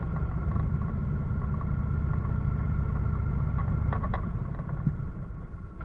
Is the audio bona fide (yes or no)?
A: yes